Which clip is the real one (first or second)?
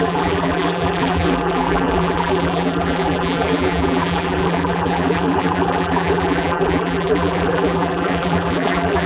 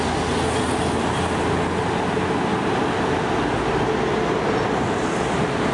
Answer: second